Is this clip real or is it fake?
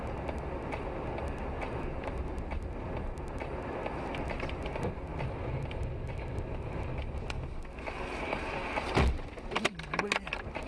real